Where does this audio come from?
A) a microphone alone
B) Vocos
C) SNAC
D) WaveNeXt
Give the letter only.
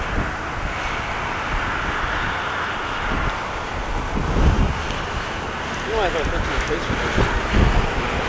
A